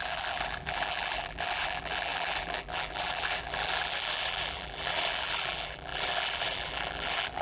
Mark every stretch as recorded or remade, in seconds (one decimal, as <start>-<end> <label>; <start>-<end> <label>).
0.0-7.4 remade